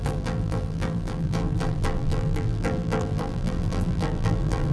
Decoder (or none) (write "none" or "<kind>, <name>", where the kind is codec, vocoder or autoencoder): vocoder, BigVGAN v2